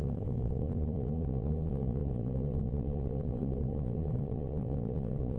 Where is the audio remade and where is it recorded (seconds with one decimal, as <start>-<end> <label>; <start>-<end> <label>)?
0.0-5.4 remade

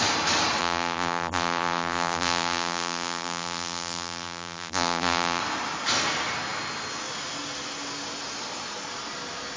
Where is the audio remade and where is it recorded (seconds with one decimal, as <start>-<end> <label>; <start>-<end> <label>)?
0.0-0.6 recorded; 0.6-5.4 remade; 5.4-9.6 recorded